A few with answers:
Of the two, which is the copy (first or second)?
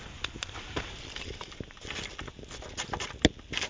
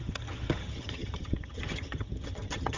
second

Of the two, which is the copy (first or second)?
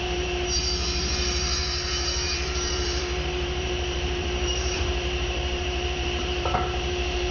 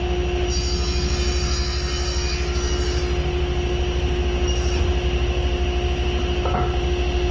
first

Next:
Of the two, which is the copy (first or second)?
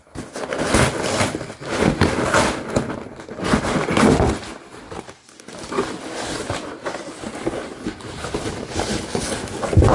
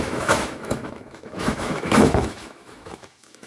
second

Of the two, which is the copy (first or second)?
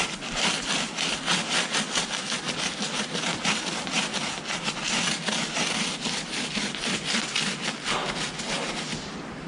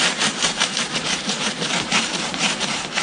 second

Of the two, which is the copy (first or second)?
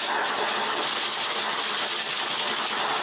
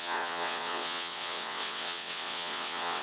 second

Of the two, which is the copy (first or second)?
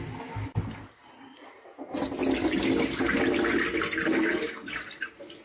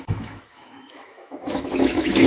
second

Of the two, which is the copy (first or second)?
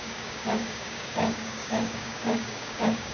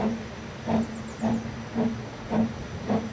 first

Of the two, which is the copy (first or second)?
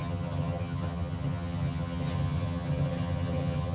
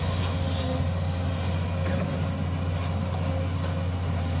first